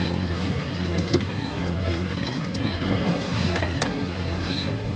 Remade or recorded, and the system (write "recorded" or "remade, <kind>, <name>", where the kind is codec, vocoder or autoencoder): remade, codec, SNAC